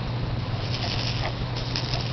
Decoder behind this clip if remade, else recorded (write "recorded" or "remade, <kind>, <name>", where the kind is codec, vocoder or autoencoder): recorded